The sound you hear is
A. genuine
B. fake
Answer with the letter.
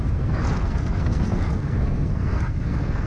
B